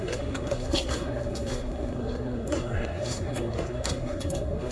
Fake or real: fake